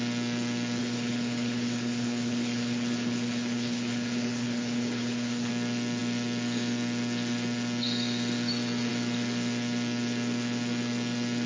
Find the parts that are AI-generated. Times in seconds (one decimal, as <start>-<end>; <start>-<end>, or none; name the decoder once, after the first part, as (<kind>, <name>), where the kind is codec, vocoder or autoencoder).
0.8-5.5 (codec, HILCodec)

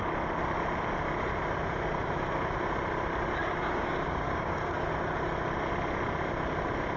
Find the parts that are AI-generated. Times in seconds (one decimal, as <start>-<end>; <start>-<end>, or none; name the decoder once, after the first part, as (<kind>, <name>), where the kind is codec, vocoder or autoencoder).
3.4-4.9 (codec, DAC)

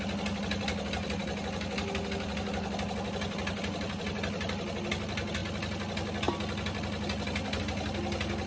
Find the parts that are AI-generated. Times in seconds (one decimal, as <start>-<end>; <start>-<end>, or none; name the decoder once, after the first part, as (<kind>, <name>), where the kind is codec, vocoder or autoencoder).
none

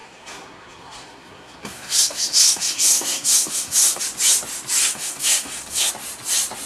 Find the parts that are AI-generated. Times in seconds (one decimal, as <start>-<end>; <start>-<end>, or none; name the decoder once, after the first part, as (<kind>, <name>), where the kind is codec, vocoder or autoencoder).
0.0-4.0 (codec, SNAC); 4.8-5.9

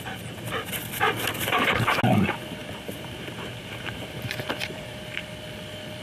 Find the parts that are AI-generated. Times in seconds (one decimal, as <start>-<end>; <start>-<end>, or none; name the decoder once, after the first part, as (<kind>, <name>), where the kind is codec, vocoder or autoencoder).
2.6-5.2 (vocoder, BigVGAN v2)

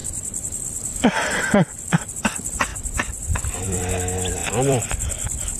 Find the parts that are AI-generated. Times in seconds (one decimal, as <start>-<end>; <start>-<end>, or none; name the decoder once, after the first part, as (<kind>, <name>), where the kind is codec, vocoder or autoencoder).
0.0-2.1 (vocoder, BigVGAN v2); 2.7-3.8; 4.4-5.6